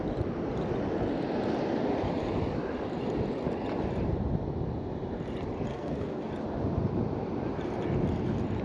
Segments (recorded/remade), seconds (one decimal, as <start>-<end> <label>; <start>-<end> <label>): 0.0-5.7 recorded; 5.7-6.3 remade; 6.3-8.6 recorded